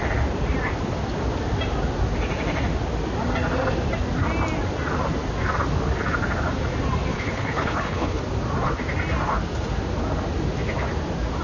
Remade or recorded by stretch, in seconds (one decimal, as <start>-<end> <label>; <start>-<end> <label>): 0.0-7.1 recorded; 7.1-8.2 remade; 8.2-11.4 recorded